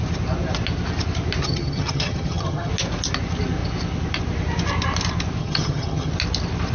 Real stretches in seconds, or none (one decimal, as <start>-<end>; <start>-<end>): 0.0-1.4; 2.7-5.4; 6.1-6.7